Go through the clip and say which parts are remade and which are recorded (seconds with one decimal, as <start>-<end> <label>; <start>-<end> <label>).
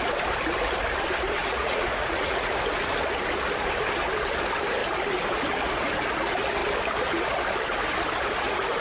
0.0-1.4 recorded; 1.4-2.5 remade; 2.5-8.8 recorded